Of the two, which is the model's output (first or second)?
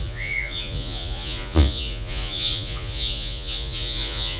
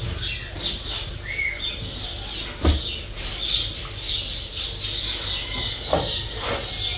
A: first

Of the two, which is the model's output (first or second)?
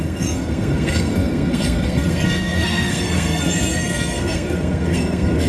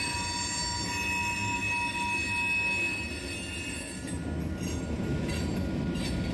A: first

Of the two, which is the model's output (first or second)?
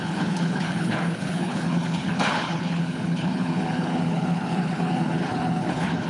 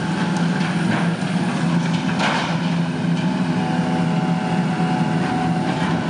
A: first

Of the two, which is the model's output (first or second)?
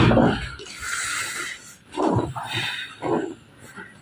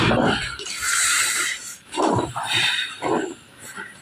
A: second